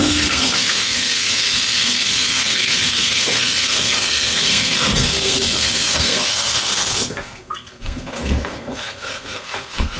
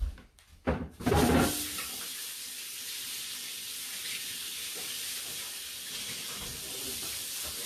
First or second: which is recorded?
second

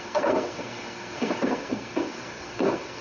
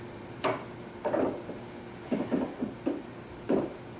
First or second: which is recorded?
second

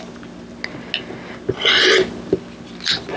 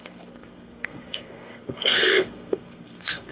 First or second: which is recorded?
first